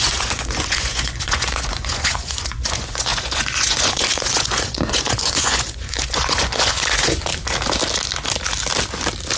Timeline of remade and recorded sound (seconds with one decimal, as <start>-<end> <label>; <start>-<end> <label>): 0.0-7.3 remade; 7.3-9.4 recorded